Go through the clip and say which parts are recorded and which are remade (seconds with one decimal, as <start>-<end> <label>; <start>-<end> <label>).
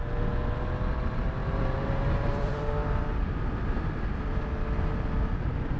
0.0-1.4 recorded; 1.4-2.7 remade; 2.7-5.8 recorded